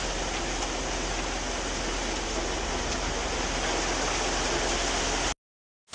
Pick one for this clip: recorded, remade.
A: recorded